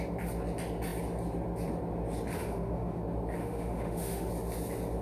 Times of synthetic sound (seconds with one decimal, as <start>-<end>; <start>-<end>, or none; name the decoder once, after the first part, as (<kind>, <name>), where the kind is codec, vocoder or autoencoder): 2.4-3.0 (autoencoder, DAC-VAE); 3.4-4.3